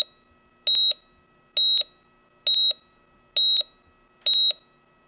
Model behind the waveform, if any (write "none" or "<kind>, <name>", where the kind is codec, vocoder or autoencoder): none